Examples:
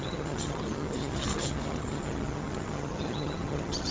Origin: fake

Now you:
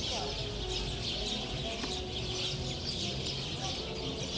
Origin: real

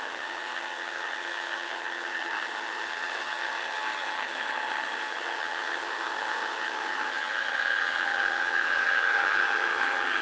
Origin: fake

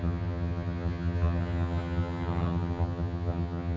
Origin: fake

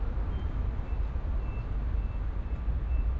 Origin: real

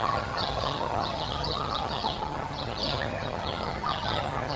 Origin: fake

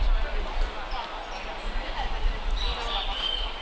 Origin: real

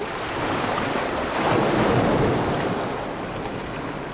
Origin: real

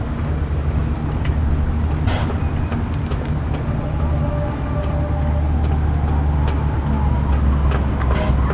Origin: real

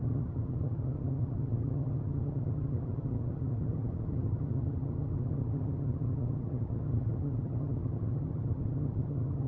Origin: fake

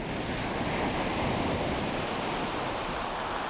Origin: real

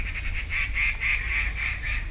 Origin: real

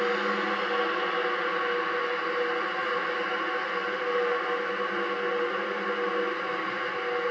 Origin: real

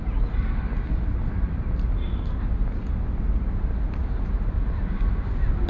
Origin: real